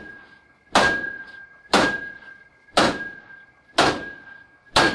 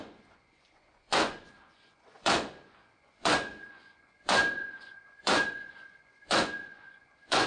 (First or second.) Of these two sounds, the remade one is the second